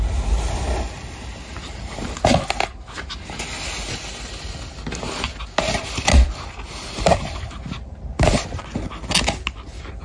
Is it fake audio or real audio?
real